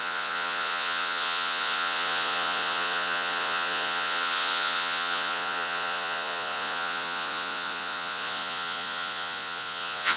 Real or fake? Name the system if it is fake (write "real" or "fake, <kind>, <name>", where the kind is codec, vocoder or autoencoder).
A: fake, vocoder, Vocos